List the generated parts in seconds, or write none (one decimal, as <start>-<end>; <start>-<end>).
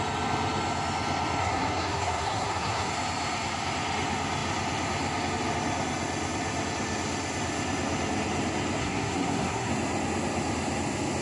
1.4-2.9; 8.8-9.7